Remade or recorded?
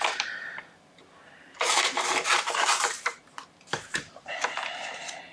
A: remade